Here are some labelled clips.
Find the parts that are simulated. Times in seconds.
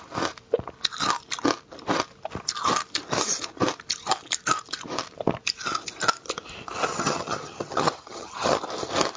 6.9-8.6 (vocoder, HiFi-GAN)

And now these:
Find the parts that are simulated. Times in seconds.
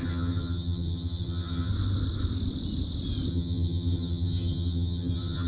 0.0-1.7 (vocoder, HiFi-GAN); 3.3-5.5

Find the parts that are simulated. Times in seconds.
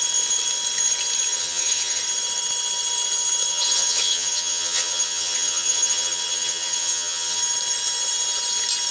1.3-2.0 (vocoder, HiFi-GAN); 3.5-7.4